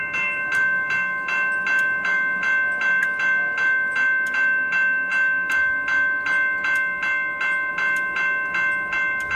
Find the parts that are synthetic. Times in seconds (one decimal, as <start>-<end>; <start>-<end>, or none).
none